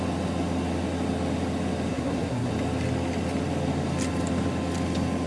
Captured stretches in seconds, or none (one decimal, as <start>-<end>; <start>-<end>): 0.0-1.9; 2.5-5.3